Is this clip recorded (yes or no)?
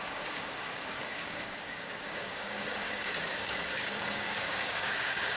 no